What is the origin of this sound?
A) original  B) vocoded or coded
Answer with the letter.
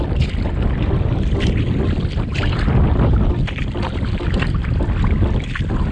A